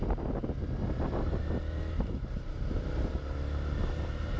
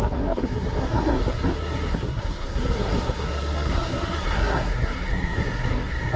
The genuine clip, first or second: first